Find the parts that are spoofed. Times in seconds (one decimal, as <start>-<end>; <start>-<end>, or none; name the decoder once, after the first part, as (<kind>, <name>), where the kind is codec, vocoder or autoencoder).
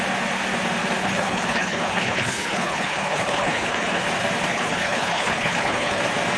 1.0-4.0 (codec, HILCodec); 4.5-6.0